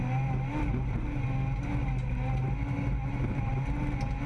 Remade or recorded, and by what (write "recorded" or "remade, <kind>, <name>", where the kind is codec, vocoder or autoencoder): recorded